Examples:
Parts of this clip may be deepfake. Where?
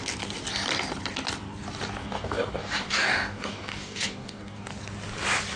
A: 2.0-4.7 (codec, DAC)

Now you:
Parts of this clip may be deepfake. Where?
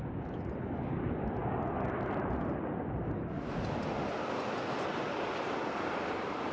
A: none